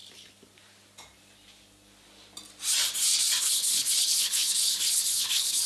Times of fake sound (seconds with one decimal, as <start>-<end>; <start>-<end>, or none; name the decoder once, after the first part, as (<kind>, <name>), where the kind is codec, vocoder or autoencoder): 3.4-5.7 (codec, HILCodec)